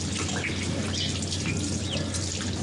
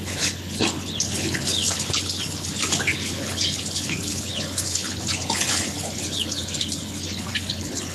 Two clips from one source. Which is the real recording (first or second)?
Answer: first